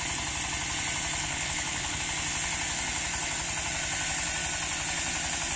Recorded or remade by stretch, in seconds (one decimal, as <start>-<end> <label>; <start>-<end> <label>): 0.0-1.2 recorded; 1.2-2.0 remade; 2.0-5.6 recorded